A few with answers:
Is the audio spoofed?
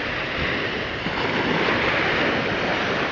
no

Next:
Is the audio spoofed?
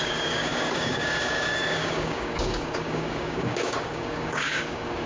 yes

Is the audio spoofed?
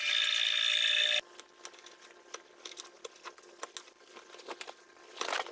no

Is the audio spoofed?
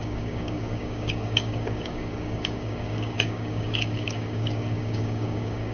yes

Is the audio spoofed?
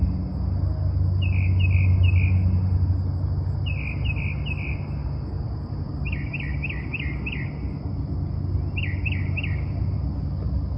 no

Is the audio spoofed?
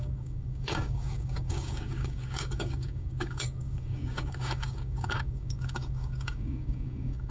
yes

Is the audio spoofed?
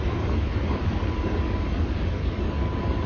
yes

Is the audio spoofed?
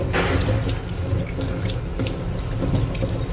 no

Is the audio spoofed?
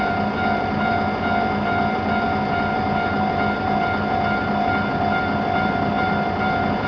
no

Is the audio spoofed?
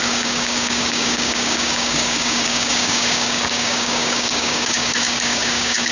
yes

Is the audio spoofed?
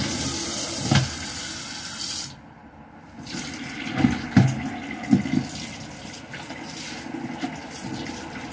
no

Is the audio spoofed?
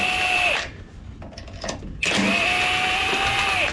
no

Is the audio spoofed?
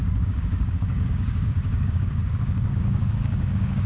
yes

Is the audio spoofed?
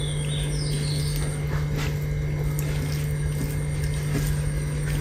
no